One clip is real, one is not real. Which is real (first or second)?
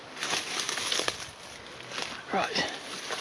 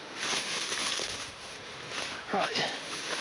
first